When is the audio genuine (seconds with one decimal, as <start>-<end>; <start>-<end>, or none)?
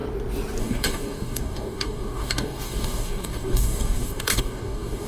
0.0-0.6